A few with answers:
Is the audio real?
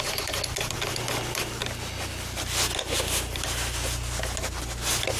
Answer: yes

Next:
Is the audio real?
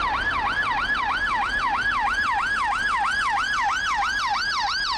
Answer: yes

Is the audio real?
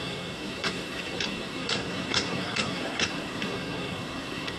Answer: no